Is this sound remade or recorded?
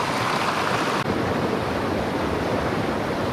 recorded